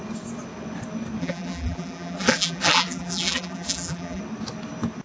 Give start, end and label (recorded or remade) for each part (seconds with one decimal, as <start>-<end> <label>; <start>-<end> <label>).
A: 0.0-1.2 recorded; 1.2-4.2 remade; 4.2-5.0 recorded